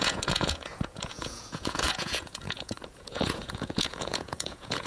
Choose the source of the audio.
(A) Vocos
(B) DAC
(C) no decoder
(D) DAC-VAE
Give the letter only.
A